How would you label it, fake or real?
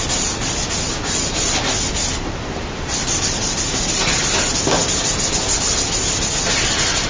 real